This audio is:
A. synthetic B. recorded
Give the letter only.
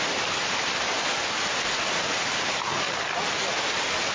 B